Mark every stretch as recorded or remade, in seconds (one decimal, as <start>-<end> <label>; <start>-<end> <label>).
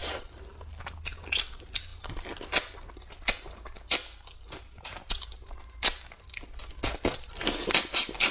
0.0-8.3 recorded